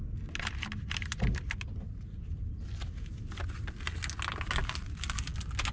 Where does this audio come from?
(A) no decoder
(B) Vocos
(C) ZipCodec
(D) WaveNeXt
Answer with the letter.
A